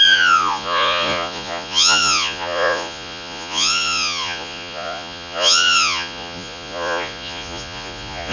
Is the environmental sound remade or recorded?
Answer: remade